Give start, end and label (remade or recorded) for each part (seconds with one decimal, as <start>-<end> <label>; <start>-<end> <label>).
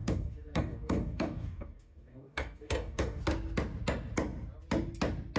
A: 0.0-3.2 remade; 3.2-5.4 recorded